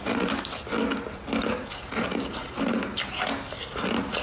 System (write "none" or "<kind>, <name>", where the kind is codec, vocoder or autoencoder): none